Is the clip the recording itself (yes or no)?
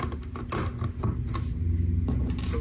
yes